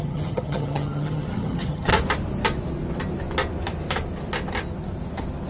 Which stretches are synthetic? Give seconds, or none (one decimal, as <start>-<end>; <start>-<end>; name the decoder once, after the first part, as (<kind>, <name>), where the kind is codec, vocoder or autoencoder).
0.0-1.9 (vocoder, HiFi-GAN)